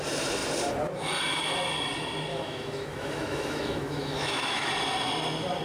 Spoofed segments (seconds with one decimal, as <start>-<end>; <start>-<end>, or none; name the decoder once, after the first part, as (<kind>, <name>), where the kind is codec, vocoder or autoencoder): 2.3-4.7 (autoencoder, DAC-VAE)

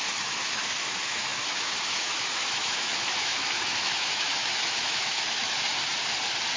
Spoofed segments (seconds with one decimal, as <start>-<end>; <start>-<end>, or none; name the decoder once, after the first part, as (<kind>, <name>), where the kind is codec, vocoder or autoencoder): 0.0-5.7 (autoencoder, DAC-VAE)